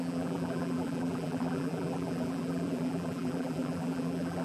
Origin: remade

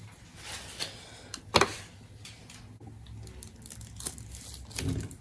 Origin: recorded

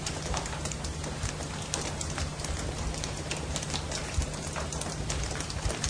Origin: remade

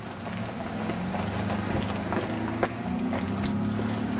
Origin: recorded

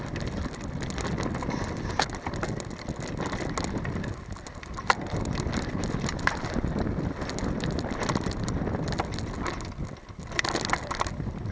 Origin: recorded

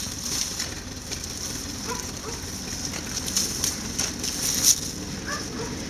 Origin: recorded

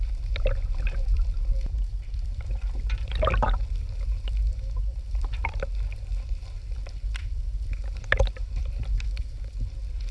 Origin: remade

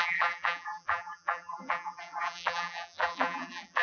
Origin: remade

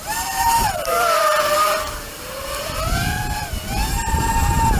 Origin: remade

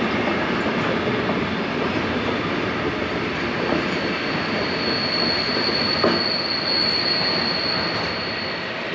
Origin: recorded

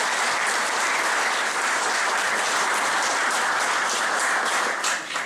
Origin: remade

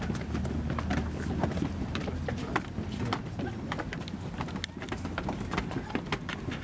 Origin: recorded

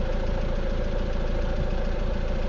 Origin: remade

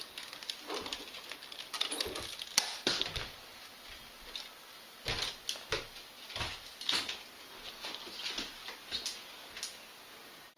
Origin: recorded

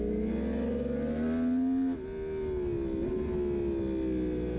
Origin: recorded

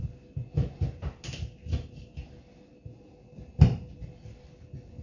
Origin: recorded